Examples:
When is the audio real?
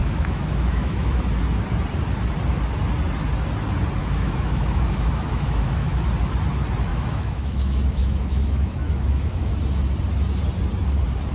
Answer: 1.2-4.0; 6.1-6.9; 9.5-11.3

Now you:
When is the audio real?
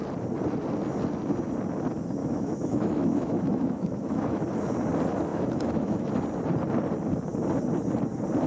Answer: 0.0-2.2; 4.4-5.3; 6.1-8.5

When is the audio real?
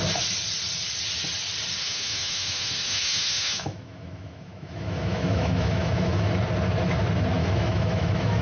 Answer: 0.0-1.8; 6.3-7.4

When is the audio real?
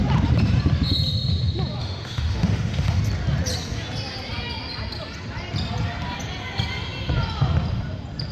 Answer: 0.0-1.8; 3.0-8.3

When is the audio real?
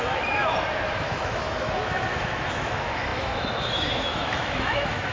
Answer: 0.4-0.9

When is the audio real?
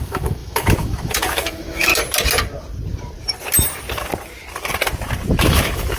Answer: 1.9-5.4